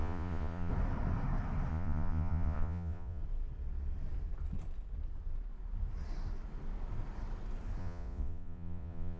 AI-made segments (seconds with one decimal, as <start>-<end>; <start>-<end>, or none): 0.0-0.7; 1.7-3.2; 7.8-9.2